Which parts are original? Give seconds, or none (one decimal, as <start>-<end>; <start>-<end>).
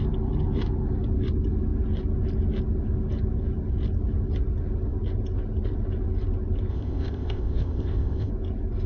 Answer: 0.0-6.7; 8.3-8.9